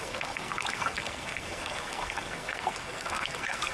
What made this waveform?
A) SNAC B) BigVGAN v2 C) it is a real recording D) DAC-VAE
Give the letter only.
A